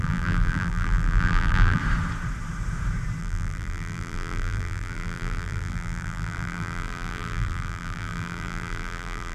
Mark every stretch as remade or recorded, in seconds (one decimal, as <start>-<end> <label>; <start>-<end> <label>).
0.0-1.8 remade; 1.8-3.2 recorded; 3.2-9.3 remade